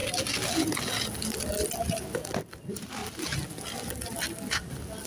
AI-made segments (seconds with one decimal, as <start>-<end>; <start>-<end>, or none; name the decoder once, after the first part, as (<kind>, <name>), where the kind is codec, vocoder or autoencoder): none